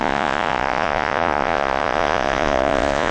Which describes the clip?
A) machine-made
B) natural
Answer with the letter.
A